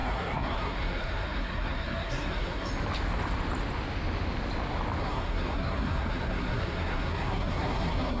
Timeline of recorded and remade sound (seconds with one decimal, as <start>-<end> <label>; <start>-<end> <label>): 0.0-2.7 remade; 2.7-5.0 recorded; 5.0-8.2 remade